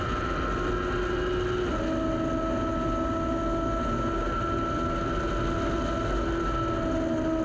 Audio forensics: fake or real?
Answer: real